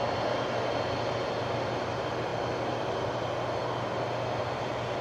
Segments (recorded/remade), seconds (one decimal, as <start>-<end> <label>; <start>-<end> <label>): 0.0-5.0 recorded